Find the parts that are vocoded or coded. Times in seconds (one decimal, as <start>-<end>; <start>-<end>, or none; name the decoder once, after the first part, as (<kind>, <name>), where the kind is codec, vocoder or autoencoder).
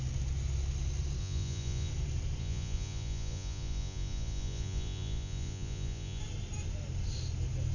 1.2-1.9 (vocoder, Vocos); 2.4-6.2